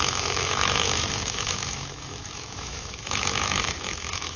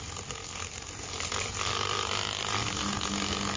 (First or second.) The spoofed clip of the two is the first